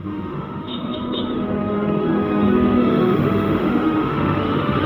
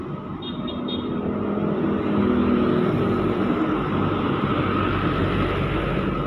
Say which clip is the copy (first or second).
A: first